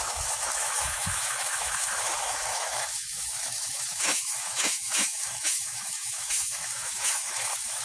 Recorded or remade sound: remade